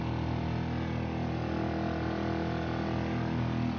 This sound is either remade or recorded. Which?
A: recorded